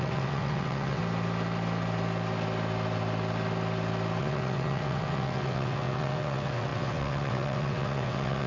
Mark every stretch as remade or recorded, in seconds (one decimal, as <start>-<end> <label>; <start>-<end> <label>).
0.0-1.0 remade; 1.0-4.2 recorded; 4.2-8.5 remade